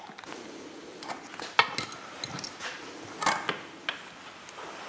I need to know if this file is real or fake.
real